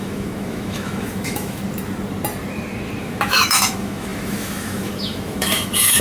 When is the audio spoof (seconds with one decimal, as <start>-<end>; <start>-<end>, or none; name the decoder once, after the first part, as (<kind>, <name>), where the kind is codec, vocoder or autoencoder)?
0.0-1.6 (autoencoder, DAC-VAE); 3.0-6.0